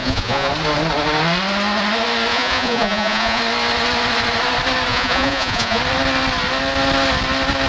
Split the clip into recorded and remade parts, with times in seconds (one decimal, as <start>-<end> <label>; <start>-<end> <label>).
0.0-0.5 remade; 0.5-2.3 recorded; 2.3-3.4 remade; 3.4-4.9 recorded; 4.9-5.8 remade; 5.8-7.7 recorded